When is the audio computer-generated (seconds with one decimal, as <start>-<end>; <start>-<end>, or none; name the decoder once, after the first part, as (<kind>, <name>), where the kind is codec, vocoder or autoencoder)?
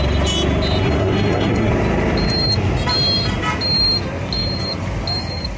0.8-1.7 (codec, SNAC)